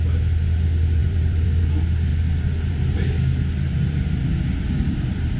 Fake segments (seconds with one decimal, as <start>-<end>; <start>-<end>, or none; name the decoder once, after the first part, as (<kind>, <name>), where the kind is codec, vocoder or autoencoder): 1.0-1.6 (vocoder, BigVGAN v2)

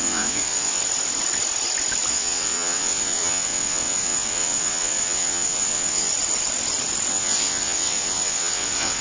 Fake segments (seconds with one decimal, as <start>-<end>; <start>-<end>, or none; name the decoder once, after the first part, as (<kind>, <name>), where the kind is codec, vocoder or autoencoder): 0.0-0.8 (vocoder, WaveNeXt); 2.1-6.1; 7.1-9.0